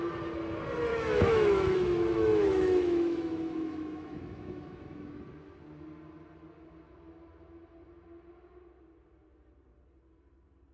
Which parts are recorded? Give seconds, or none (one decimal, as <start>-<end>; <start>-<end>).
0.0-0.9; 5.2-10.7